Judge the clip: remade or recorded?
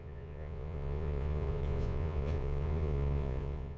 remade